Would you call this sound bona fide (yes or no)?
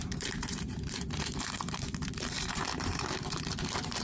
no